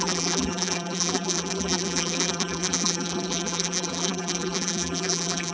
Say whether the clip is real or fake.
fake